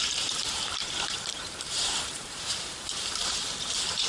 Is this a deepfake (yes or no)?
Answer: yes